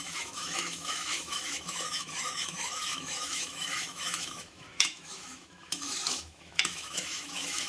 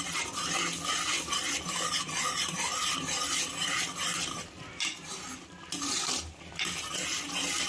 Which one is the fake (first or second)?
first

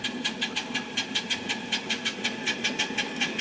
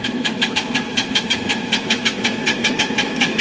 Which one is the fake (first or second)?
second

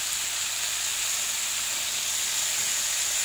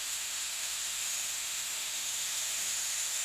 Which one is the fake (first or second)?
second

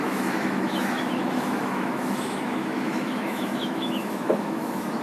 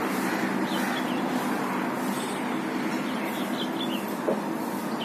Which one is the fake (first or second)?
first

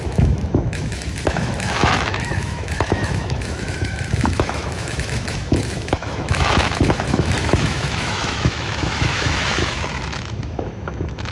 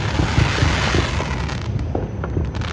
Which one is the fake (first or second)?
first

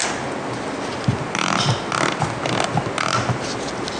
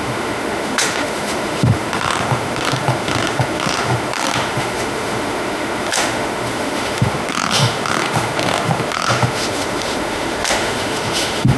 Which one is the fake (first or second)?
second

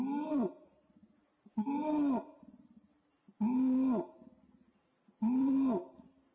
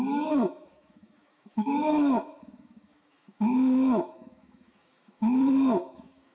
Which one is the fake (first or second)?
second